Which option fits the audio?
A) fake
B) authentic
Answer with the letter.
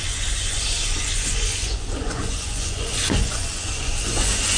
A